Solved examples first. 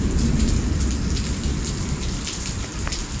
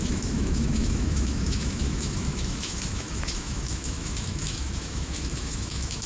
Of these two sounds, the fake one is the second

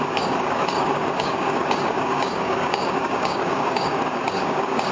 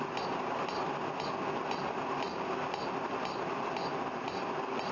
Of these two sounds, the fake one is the first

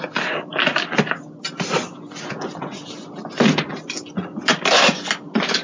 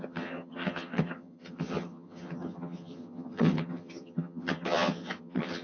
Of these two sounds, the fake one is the second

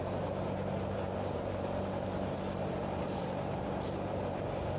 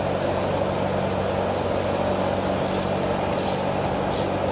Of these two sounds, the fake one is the first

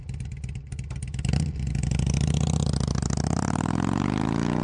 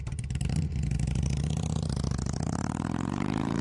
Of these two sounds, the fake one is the second